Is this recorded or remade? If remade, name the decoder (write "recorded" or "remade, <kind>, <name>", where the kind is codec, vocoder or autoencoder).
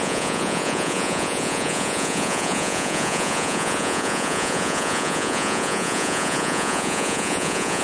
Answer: remade, vocoder, Vocos